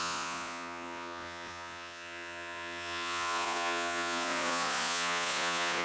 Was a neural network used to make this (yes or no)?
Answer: yes